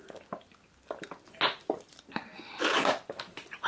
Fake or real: real